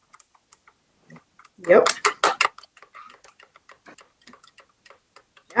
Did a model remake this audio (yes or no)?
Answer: no